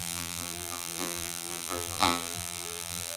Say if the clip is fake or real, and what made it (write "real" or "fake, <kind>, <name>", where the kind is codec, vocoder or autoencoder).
fake, vocoder, BigVGAN v2